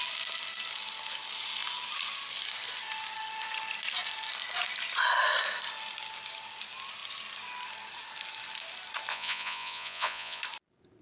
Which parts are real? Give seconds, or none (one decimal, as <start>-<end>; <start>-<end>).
0.0-9.1; 10.4-11.0